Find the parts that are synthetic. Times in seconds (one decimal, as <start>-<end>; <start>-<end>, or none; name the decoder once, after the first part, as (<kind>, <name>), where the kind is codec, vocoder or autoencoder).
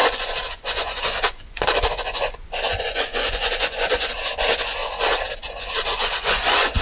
0.0-4.8 (vocoder, Vocos); 5.3-6.8